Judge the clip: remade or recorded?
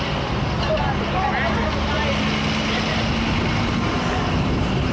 recorded